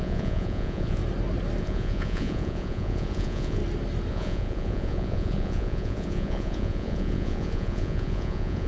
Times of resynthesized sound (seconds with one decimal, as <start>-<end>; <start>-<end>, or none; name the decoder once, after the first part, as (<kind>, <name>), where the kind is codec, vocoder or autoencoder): 0.0-1.0 (vocoder, Vocos); 1.6-3.6; 4.1-8.7

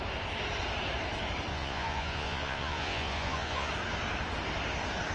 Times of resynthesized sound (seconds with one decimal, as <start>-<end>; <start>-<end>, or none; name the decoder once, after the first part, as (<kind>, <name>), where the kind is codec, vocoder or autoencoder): 1.5-3.7 (vocoder, Vocos)

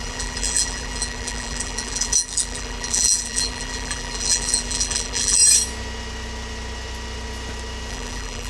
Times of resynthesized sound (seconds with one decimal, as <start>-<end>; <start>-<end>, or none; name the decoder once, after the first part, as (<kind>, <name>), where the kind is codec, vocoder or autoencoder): 0.0-5.4 (vocoder, BigVGAN v2); 7.9-8.5

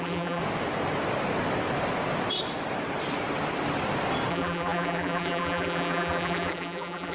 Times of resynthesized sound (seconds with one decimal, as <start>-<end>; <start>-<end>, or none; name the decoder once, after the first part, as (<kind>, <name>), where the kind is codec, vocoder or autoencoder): 0.0-0.4 (vocoder, BigVGAN v2); 4.3-7.1